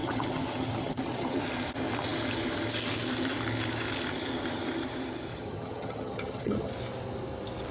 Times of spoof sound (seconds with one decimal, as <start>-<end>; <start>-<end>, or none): 0.0-1.4; 5.3-6.7

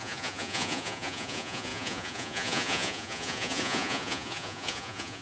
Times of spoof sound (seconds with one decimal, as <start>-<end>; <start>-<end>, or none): 0.0-5.2

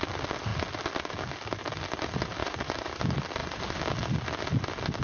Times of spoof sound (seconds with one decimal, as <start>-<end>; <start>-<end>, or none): 2.4-3.0; 3.4-3.9

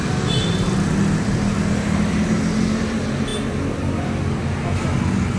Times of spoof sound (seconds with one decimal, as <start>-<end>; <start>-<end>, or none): none